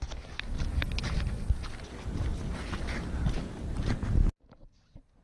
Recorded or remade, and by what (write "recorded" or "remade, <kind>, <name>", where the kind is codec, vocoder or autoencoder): recorded